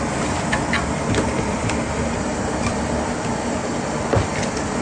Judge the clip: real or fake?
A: real